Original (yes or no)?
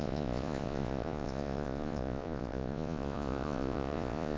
no